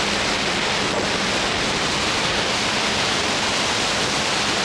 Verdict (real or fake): real